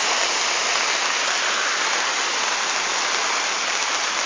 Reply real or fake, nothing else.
real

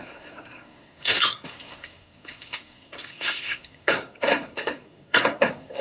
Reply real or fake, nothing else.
fake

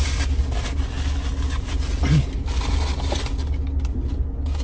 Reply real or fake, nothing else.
real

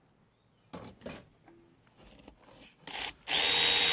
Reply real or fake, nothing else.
real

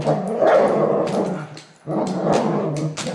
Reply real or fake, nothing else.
real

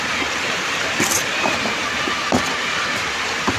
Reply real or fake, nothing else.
fake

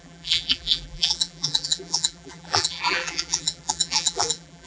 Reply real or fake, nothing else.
fake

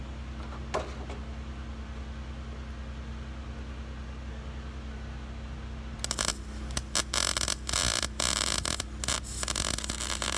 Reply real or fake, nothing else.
real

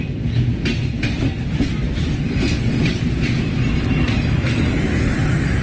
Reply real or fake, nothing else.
real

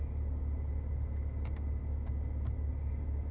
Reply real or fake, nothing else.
real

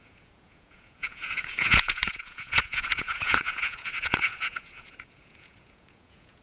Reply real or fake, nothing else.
fake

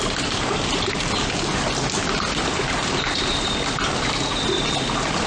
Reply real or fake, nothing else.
real